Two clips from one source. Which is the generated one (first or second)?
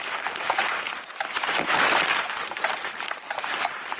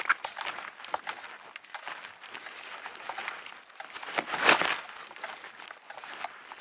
first